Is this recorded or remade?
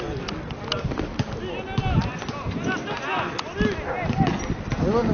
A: recorded